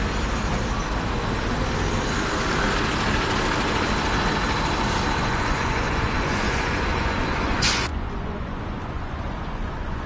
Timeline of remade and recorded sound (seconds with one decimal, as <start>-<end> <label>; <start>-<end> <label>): 0.0-5.2 recorded; 5.2-10.1 remade

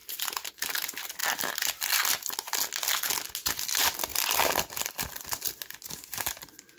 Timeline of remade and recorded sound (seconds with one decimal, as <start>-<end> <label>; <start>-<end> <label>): 0.0-6.8 recorded

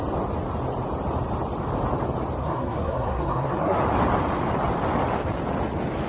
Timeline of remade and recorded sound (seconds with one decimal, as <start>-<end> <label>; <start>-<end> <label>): 0.0-2.4 recorded; 2.4-3.8 remade; 3.8-6.1 recorded